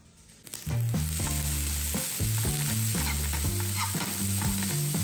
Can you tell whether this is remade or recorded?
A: recorded